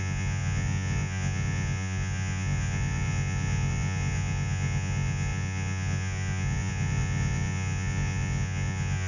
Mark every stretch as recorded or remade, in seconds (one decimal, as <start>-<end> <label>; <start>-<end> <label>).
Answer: 0.0-9.1 remade